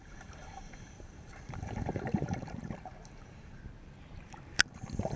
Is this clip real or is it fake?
fake